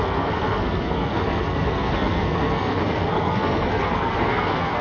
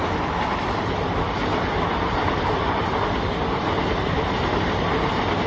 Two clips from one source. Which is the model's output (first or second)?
first